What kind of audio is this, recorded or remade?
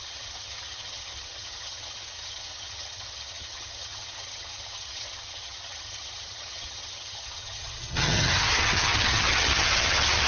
remade